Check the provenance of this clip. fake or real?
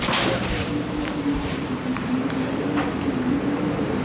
fake